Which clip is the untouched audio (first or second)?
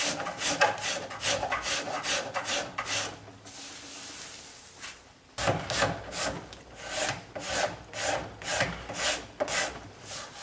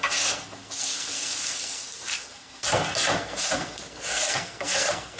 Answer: first